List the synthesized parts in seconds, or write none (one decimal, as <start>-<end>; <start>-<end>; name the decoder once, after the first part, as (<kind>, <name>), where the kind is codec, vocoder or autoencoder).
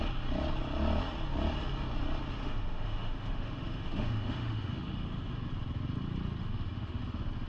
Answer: 2.4-5.5 (autoencoder, DAC-VAE); 6.4-7.0